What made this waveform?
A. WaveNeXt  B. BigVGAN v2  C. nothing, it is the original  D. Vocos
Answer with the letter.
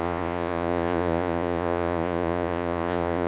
D